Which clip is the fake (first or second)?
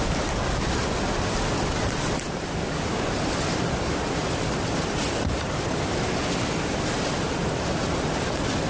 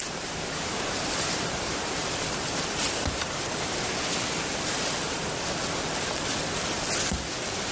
second